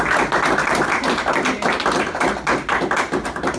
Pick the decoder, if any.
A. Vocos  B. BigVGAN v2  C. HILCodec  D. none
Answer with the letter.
D